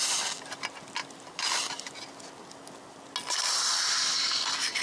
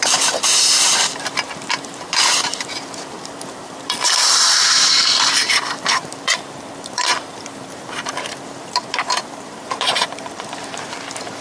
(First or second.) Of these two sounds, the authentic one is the first